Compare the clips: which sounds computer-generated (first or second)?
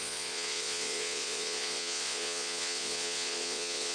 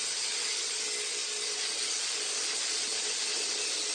first